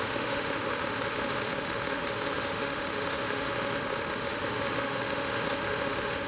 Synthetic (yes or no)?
yes